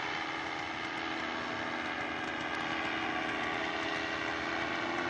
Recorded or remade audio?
recorded